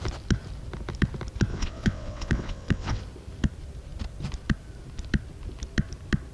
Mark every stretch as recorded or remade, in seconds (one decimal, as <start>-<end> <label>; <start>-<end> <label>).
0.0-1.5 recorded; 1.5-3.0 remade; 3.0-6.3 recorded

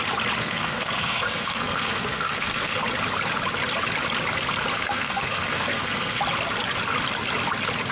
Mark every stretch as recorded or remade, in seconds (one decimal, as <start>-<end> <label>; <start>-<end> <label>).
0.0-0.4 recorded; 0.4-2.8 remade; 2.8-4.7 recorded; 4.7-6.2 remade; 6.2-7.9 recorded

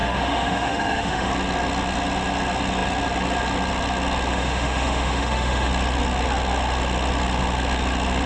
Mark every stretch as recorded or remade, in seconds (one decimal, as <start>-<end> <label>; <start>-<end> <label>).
0.0-1.3 remade; 1.3-4.3 recorded; 4.3-5.7 remade; 5.7-8.3 recorded

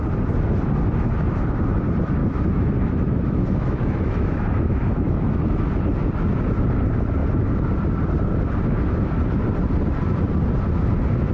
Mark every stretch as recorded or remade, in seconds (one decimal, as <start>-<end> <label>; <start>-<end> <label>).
0.0-2.2 recorded; 2.2-5.7 remade; 5.7-11.3 recorded